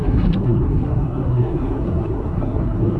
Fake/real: fake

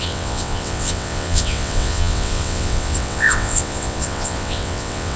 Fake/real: fake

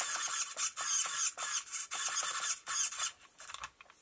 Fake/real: real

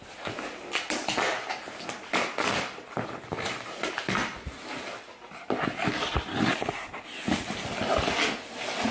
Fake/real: real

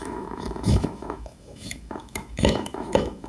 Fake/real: fake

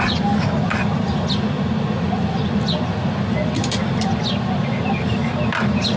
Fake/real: real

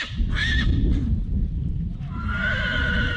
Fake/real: real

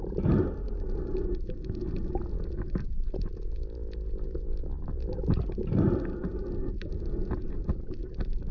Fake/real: real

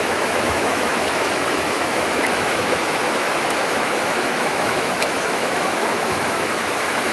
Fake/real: fake